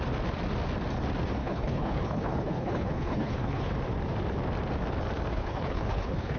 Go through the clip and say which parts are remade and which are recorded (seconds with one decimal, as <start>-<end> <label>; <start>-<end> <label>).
0.0-1.4 recorded; 1.4-3.7 remade; 3.7-5.3 recorded; 5.3-6.4 remade